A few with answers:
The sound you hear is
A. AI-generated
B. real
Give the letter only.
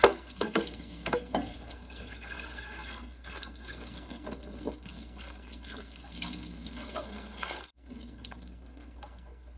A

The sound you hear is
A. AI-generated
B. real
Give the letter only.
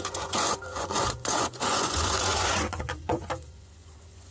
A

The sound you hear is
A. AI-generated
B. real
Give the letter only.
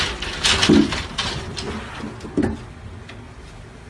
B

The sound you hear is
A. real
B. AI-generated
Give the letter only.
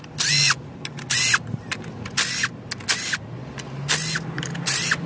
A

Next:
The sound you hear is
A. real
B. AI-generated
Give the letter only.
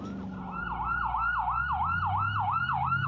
A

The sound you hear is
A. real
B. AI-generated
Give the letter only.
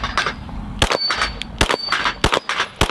A